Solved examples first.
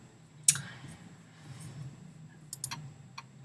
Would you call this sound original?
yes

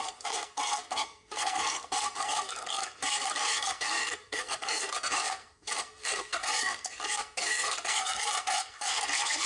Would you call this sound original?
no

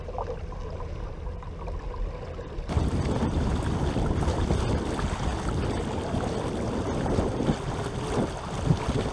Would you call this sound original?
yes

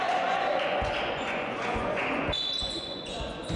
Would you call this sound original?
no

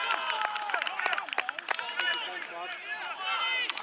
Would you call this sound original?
yes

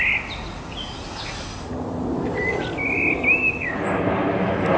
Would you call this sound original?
yes